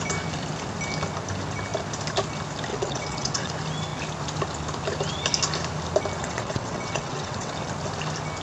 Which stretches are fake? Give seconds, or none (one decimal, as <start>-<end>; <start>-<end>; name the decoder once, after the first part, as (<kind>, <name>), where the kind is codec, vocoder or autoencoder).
2.7-3.5 (vocoder, WaveNeXt); 6.2-7.5